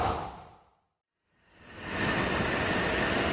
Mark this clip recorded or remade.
recorded